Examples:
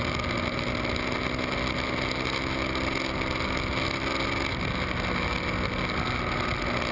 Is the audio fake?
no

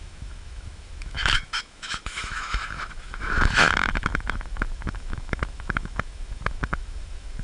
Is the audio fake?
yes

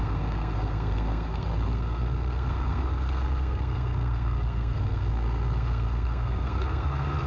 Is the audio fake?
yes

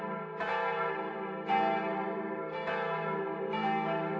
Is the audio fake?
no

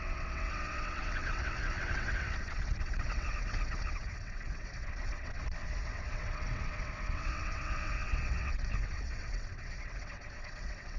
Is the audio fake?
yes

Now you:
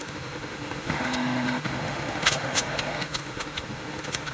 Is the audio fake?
yes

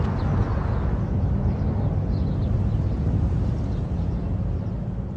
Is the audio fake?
no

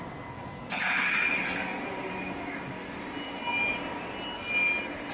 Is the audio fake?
no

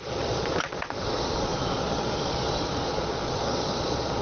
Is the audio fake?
yes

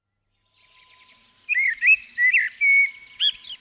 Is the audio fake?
no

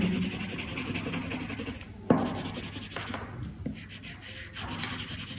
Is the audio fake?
no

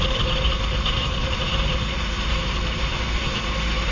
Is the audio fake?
yes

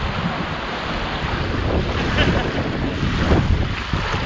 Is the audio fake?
no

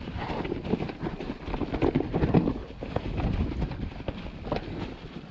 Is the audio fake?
no